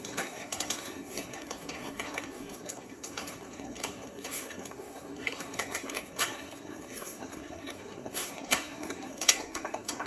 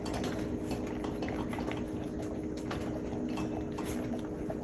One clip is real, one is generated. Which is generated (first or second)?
first